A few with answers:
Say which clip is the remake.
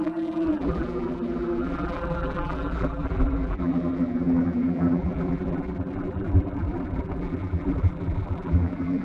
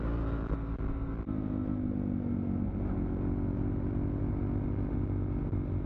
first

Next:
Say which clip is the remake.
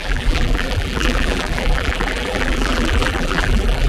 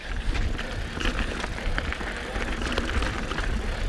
first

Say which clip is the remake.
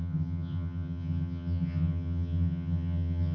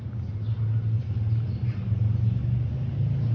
first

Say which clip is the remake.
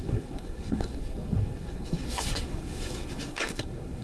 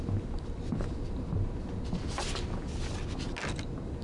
first